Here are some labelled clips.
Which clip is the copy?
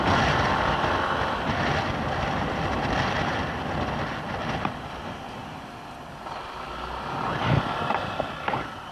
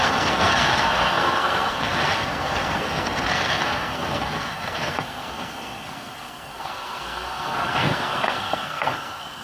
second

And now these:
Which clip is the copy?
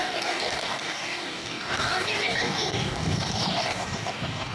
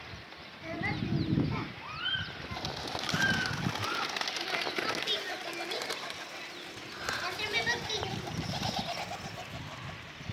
first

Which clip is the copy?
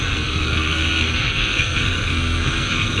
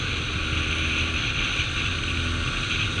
first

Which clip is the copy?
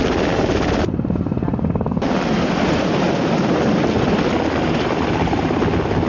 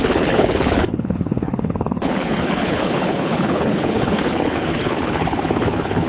second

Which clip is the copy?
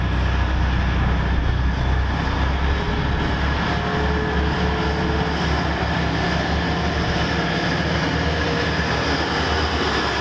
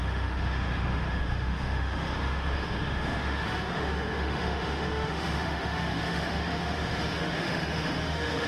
second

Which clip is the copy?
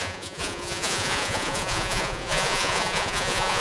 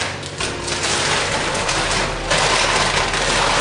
first